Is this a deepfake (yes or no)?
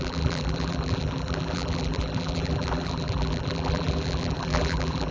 yes